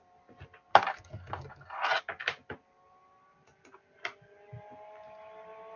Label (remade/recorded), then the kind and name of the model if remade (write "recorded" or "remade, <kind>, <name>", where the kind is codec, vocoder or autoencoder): recorded